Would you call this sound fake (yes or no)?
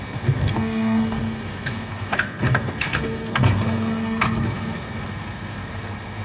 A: yes